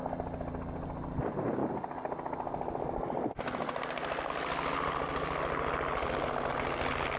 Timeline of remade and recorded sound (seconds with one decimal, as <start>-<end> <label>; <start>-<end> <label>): 0.0-7.2 recorded